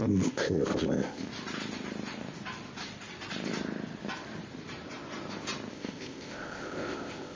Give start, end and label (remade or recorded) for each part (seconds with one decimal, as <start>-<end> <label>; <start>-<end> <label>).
0.0-1.3 remade; 1.3-5.7 recorded; 5.7-7.4 remade